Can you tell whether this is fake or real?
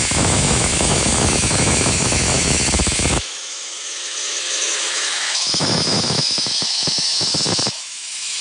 fake